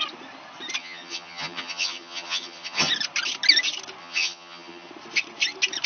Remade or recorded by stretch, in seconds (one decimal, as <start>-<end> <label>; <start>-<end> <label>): 0.0-0.8 recorded; 0.8-2.9 remade; 2.9-4.0 recorded; 4.0-4.9 remade; 4.9-5.9 recorded